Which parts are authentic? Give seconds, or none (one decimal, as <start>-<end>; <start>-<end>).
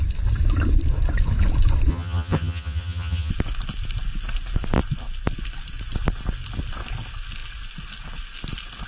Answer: 0.0-1.9; 3.3-8.9